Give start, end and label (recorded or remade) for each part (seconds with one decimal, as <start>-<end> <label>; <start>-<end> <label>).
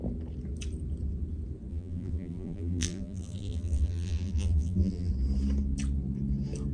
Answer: 0.0-1.7 recorded; 1.7-5.1 remade; 5.1-6.7 recorded